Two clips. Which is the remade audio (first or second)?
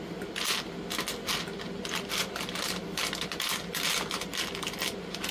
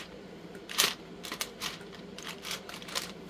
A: second